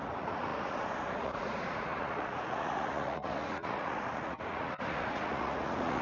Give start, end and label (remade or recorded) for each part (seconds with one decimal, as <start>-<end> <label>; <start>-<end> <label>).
0.0-6.0 remade